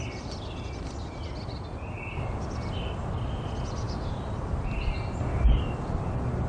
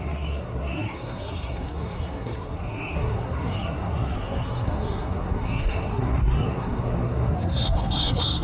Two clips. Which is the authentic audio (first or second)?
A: first